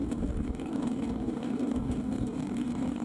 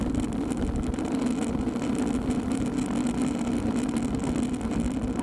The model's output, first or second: first